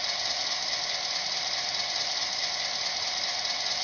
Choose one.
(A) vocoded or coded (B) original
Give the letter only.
B